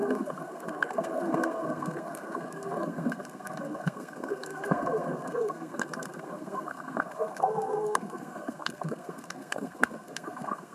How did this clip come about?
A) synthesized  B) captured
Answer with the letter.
A